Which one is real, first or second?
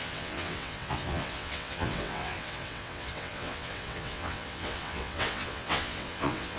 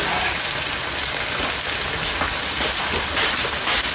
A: second